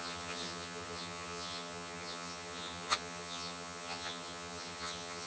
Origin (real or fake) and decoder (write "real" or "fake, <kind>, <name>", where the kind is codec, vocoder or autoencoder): fake, vocoder, HiFi-GAN